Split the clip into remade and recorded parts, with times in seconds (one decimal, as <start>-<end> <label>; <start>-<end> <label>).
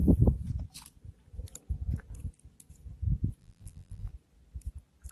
0.0-3.4 recorded; 3.4-4.1 remade; 4.1-5.1 recorded